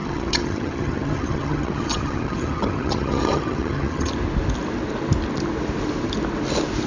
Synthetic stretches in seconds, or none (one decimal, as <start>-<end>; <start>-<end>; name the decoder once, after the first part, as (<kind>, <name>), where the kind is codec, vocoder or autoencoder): 0.0-4.1 (vocoder, HiFi-GAN)